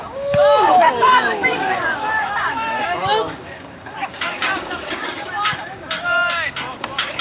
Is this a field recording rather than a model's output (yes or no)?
no